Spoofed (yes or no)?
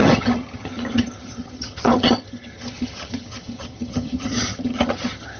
yes